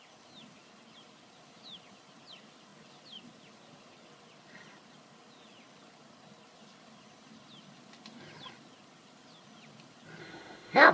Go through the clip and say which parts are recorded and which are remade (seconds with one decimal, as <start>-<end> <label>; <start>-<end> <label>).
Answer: 0.0-10.2 recorded; 10.2-10.9 remade